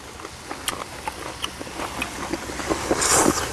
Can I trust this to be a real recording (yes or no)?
yes